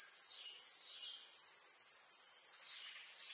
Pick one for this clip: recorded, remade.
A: recorded